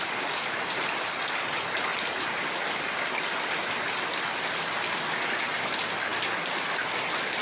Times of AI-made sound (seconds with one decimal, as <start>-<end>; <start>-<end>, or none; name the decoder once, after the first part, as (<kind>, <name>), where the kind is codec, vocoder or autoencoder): 6.1-6.8 (vocoder, BigVGAN v2)